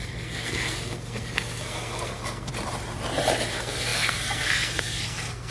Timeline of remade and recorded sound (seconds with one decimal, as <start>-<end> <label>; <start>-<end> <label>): 0.0-2.5 remade; 2.5-3.5 recorded; 3.5-5.5 remade